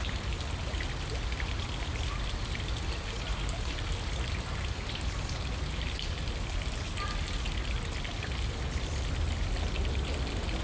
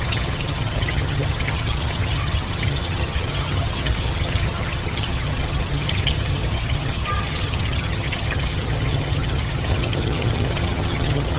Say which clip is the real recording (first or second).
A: first